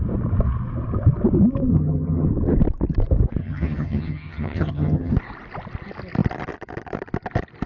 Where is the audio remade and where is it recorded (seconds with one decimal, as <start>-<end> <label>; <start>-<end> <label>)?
0.0-1.7 recorded; 1.7-2.3 remade; 2.3-3.4 recorded; 3.4-5.1 remade; 5.1-7.7 recorded